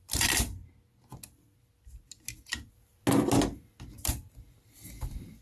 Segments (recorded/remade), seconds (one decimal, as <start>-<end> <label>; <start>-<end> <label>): 0.0-0.6 remade; 0.6-3.8 recorded; 3.8-5.4 remade